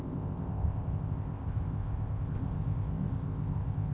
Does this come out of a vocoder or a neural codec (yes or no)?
yes